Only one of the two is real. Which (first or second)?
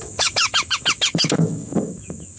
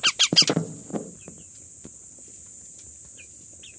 second